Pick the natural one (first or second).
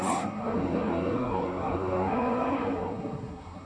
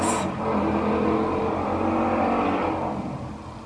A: second